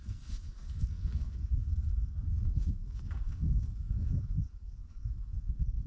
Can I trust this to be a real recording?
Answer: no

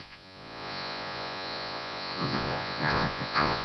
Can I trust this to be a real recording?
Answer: no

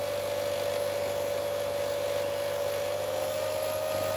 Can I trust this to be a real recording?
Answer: yes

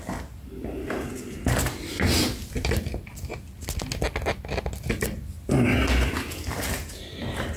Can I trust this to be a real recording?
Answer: yes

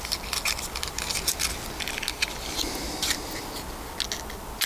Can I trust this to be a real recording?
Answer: yes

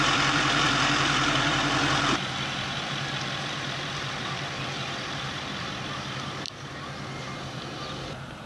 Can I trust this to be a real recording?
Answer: no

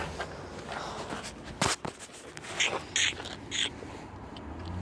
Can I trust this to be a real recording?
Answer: yes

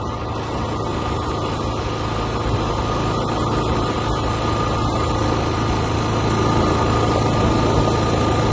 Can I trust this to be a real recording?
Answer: yes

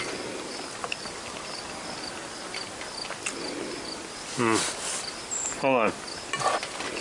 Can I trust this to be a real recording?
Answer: yes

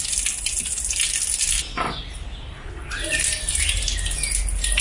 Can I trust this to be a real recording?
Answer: yes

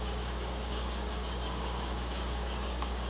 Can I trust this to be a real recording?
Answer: no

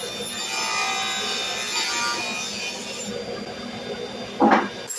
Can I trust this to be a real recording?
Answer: yes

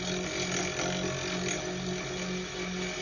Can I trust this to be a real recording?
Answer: yes